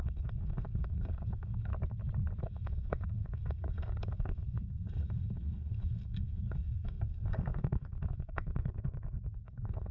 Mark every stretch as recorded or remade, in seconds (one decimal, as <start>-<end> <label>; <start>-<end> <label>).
0.0-1.7 remade; 1.7-2.4 recorded; 2.4-9.9 remade